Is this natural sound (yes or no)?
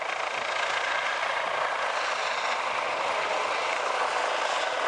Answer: yes